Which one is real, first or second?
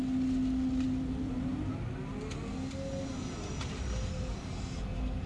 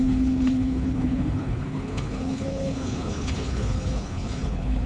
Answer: first